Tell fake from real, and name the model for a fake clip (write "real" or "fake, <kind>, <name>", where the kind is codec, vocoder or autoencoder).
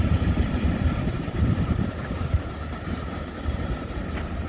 fake, vocoder, BigVGAN v2